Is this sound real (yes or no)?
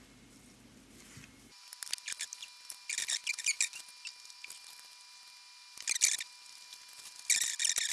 yes